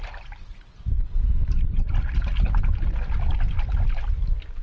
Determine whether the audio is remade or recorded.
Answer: recorded